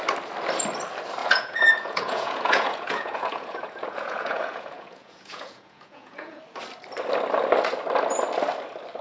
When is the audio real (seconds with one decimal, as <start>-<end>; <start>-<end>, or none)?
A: 0.0-1.2; 6.4-9.0

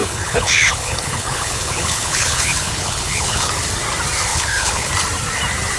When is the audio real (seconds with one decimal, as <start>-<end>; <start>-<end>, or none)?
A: 3.5-4.3; 4.9-5.8

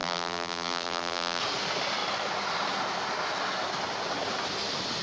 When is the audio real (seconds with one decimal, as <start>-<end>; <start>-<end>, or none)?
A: 1.4-5.0

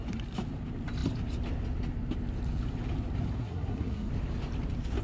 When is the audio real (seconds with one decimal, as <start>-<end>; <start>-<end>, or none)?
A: 0.0-3.4; 4.1-5.0

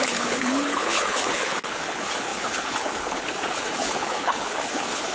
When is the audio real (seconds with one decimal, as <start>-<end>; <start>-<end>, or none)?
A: none

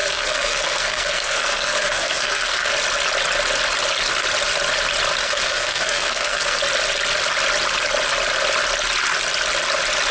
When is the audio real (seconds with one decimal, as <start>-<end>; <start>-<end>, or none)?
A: 2.7-5.2; 6.6-10.1

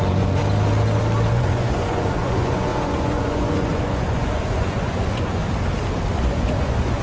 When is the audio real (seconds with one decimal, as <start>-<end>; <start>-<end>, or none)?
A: 0.4-1.3; 5.4-6.2